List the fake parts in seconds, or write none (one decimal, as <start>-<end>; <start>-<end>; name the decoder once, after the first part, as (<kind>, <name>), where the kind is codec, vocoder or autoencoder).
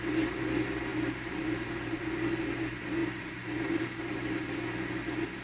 0.9-2.1 (vocoder, BigVGAN v2)